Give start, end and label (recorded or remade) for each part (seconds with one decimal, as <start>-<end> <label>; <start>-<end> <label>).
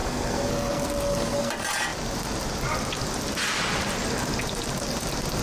0.0-1.5 remade; 1.5-5.4 recorded